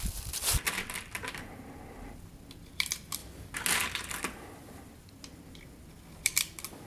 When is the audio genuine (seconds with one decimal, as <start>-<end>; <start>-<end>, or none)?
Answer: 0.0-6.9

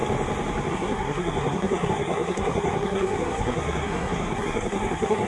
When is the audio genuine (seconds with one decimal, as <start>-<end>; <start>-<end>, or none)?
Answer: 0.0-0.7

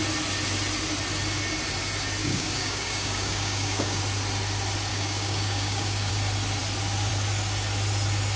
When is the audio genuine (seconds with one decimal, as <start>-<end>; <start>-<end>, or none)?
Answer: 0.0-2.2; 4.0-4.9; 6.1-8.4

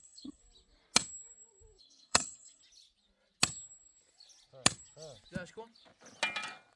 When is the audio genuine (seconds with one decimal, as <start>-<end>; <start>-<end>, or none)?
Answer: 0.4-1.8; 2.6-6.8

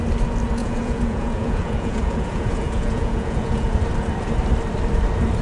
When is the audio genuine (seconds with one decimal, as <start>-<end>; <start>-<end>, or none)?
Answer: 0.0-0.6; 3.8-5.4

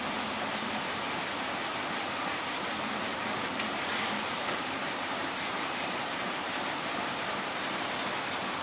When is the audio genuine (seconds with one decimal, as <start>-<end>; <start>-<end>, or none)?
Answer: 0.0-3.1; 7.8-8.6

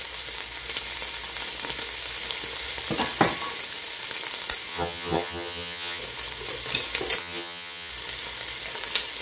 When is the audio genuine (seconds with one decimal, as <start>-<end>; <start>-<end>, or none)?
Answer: 0.0-4.7; 6.0-7.2; 7.9-9.2